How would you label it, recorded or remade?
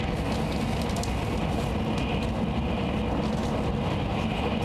recorded